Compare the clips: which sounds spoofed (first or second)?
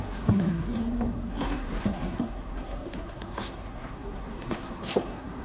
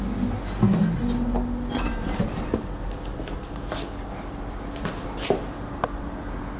first